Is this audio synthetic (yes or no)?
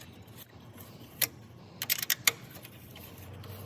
no